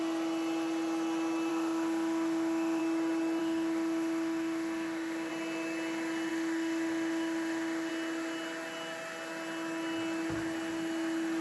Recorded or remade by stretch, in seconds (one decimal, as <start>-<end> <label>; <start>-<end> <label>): 0.0-1.5 recorded; 1.5-2.8 remade; 2.8-3.4 recorded; 3.4-5.3 remade; 5.3-6.3 recorded; 6.3-7.9 remade; 7.9-11.4 recorded